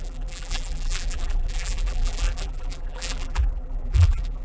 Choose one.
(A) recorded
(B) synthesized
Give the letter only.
B